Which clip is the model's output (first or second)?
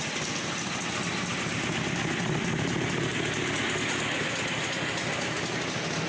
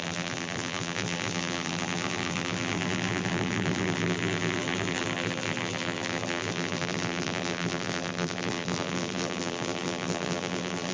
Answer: second